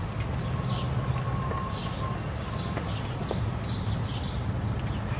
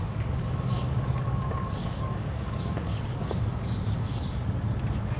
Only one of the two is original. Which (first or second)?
first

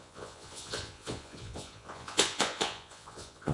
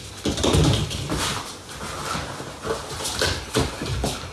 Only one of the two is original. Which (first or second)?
second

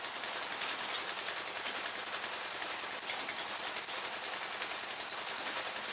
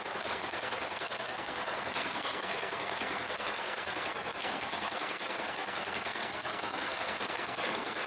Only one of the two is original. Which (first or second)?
first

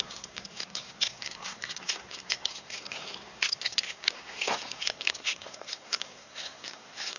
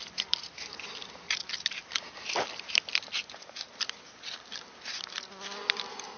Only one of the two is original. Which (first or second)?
second